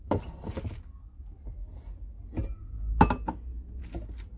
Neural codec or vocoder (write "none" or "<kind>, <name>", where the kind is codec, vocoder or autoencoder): none